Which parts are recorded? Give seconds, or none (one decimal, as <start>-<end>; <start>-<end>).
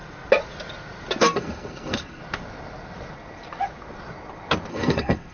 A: 0.0-1.2; 2.2-4.7